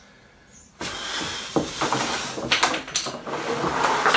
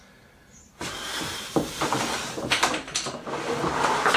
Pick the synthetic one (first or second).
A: second